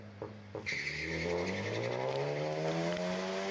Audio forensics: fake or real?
real